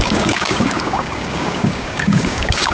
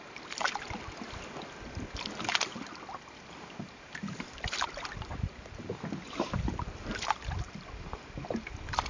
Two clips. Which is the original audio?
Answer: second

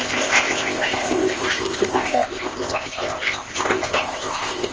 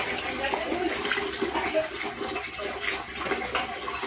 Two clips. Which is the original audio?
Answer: second